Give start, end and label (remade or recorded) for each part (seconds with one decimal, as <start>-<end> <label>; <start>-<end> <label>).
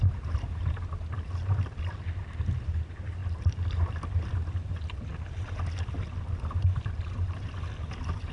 0.0-8.3 recorded